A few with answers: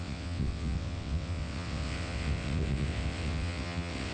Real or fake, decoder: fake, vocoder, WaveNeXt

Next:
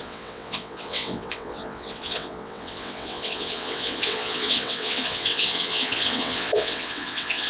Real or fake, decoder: fake, vocoder, WaveNeXt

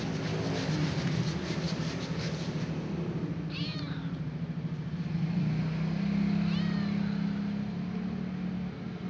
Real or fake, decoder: real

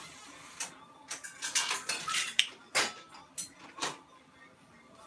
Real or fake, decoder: real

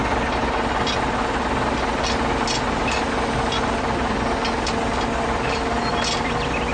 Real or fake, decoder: real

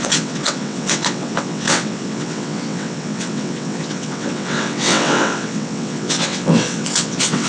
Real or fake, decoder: fake, vocoder, WaveNeXt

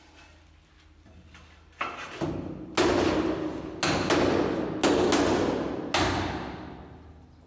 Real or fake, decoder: real